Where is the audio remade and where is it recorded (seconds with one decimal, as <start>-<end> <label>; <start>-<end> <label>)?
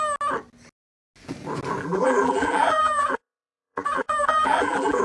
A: 0.0-1.8 recorded; 1.8-5.0 remade